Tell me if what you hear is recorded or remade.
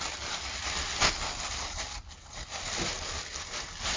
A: recorded